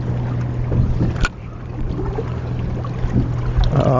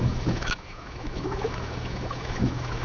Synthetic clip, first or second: second